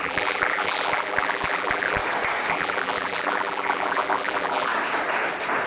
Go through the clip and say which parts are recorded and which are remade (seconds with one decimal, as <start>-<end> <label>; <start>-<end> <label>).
0.0-2.0 remade; 2.0-2.5 recorded; 2.5-4.7 remade; 4.7-5.7 recorded